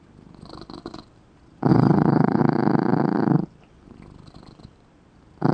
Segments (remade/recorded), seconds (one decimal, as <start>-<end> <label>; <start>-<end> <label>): 0.0-1.7 recorded; 1.7-2.4 remade; 2.4-5.5 recorded

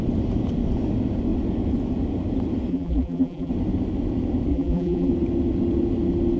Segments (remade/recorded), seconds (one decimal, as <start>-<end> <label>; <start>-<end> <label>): 0.0-2.7 recorded; 2.7-3.5 remade; 3.5-4.5 recorded; 4.5-5.1 remade; 5.1-6.4 recorded

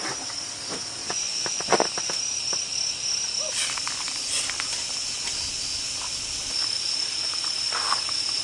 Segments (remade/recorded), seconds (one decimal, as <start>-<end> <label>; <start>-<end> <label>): 0.0-1.0 recorded; 1.0-1.9 remade; 1.9-8.4 recorded

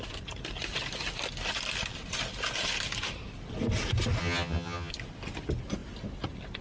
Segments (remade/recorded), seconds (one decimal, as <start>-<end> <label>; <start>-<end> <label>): 0.0-4.2 recorded; 4.2-4.9 remade; 4.9-6.6 recorded

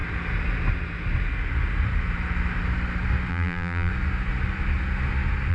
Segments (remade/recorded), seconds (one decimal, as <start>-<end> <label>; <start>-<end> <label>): 0.0-3.3 recorded; 3.3-3.9 remade; 3.9-5.5 recorded

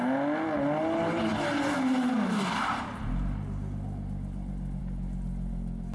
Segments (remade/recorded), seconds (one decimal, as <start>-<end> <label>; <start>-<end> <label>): 0.0-5.9 recorded